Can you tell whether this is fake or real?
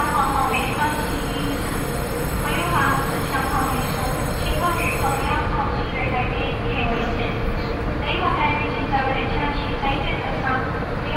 fake